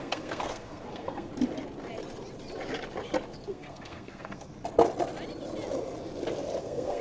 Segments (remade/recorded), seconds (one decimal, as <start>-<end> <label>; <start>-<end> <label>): 0.0-1.3 remade; 1.3-3.5 recorded; 3.5-4.5 remade; 4.5-6.6 recorded; 6.6-7.0 remade